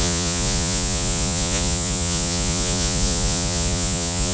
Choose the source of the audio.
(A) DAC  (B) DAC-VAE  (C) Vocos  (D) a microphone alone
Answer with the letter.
C